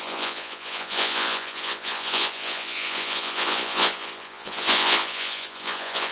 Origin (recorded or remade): remade